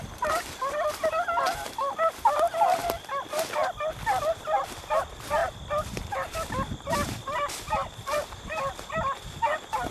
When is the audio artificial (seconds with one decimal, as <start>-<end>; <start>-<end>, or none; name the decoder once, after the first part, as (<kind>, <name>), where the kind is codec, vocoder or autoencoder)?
none

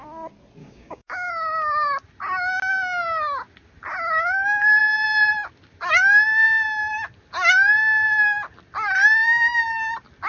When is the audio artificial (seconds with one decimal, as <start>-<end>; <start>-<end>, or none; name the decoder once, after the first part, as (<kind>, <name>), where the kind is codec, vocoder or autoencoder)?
0.6-1.3 (codec, DAC)

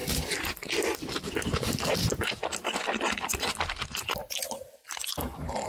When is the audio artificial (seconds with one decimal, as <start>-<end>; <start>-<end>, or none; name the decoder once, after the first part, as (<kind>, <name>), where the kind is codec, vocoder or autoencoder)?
none

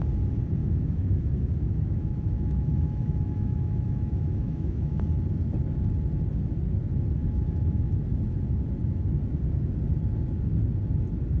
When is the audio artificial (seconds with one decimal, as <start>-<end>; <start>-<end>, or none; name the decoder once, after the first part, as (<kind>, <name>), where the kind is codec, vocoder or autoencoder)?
0.6-5.0 (autoencoder, DAC-VAE); 7.2-8.0

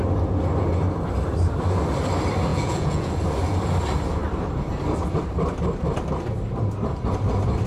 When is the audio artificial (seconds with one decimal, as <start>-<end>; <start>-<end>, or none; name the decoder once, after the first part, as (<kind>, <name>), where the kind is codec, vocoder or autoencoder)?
2.5-3.1 (vocoder, Vocos)

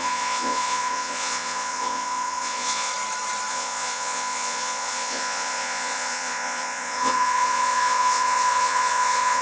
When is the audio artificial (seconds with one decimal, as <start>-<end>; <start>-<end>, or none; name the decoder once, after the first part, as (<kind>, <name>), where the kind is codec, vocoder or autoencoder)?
0.0-2.9 (vocoder, Vocos); 3.5-9.4